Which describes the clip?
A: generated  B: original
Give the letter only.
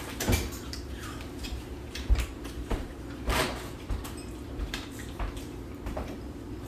A